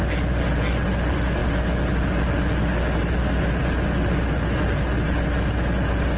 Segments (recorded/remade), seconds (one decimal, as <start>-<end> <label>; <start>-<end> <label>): 0.0-6.2 recorded